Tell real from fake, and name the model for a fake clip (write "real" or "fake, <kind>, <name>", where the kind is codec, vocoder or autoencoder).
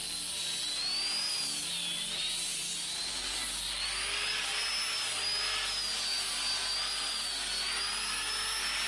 real